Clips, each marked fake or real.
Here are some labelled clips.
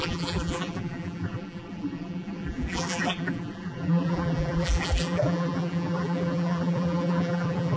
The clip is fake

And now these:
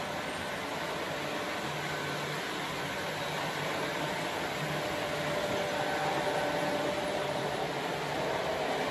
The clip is real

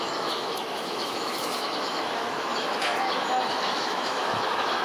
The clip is fake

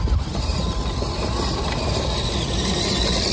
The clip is real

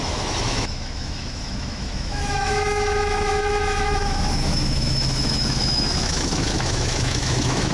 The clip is fake